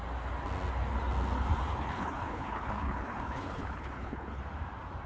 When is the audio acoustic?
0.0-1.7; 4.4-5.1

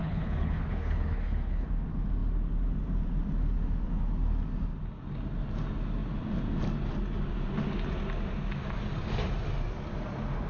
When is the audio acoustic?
1.7-10.5